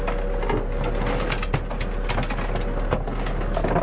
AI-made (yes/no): no